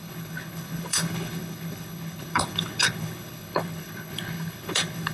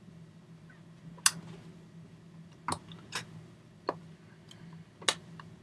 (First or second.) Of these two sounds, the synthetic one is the first